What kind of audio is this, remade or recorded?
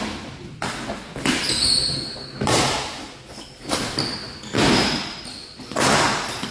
recorded